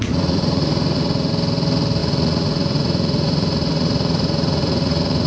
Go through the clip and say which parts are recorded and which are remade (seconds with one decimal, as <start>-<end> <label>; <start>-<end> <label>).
0.0-1.3 remade; 1.3-2.0 recorded; 2.0-5.3 remade